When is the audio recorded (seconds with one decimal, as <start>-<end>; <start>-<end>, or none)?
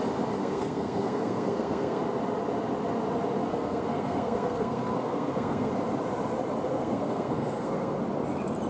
0.0-0.4; 2.0-3.5; 5.7-6.7; 8.0-8.7